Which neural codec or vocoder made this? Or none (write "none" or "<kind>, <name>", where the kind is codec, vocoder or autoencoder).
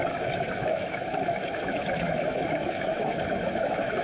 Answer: autoencoder, DAC-VAE